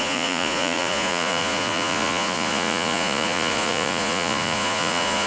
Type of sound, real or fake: fake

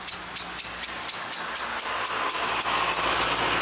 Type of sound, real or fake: real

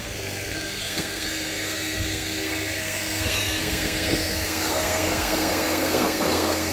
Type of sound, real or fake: fake